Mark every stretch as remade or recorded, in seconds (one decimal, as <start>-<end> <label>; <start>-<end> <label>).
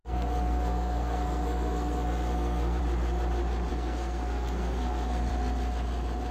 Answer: 0.0-2.8 remade; 2.8-3.7 recorded; 3.7-5.3 remade; 5.3-6.3 recorded